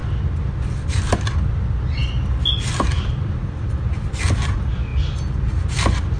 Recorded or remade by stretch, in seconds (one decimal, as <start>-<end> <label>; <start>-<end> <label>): 0.0-6.2 recorded